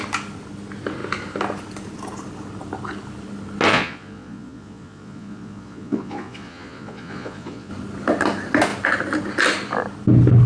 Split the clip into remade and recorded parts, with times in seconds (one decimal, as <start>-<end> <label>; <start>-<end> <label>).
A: 0.0-3.7 recorded; 3.7-7.7 remade; 7.7-10.5 recorded